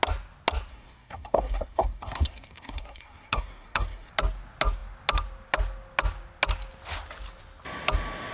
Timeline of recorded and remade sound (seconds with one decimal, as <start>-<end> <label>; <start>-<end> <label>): 0.0-0.7 recorded; 0.7-4.1 remade; 4.1-8.3 recorded